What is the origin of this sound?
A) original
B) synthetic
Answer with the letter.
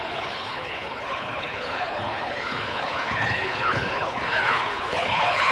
B